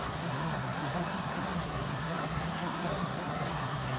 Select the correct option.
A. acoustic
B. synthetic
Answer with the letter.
B